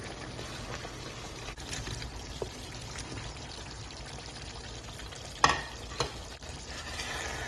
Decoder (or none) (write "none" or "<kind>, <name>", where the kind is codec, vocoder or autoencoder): none